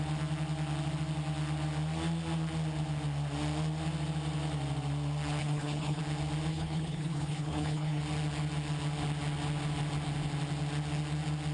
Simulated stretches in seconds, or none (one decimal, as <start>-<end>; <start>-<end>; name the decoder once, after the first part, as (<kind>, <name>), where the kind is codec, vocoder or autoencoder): 5.4-6.0 (codec, HILCodec); 6.5-8.0